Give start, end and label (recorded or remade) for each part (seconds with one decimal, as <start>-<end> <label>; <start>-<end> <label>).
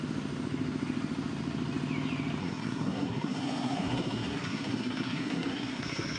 0.0-2.4 recorded; 2.4-6.2 remade